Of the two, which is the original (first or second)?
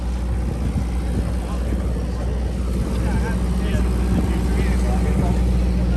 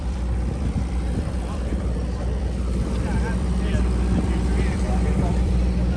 first